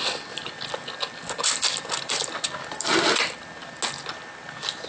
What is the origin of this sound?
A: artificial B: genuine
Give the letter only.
B